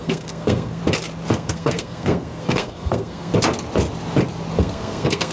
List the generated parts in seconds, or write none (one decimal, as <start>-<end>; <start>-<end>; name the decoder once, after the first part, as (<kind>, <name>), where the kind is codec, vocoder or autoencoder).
0.0-0.8 (codec, SNAC); 1.3-3.3; 4.6-5.3